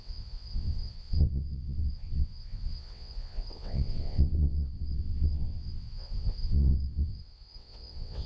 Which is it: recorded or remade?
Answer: remade